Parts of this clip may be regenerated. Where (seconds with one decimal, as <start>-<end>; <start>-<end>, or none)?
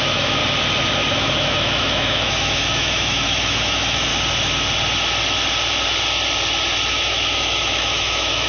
0.0-0.4; 1.1-4.1; 6.9-8.5